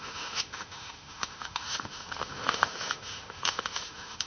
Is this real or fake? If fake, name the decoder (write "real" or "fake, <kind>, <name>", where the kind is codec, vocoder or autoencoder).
fake, autoencoder, DAC-VAE